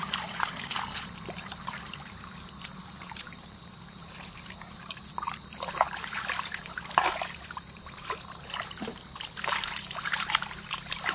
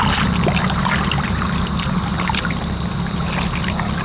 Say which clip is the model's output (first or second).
first